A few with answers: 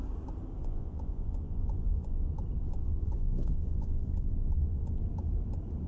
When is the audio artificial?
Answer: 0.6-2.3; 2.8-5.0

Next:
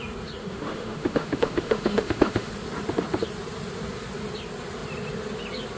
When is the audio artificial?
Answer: 0.4-2.5

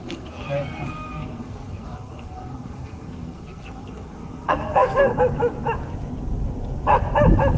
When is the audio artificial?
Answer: 0.0-5.1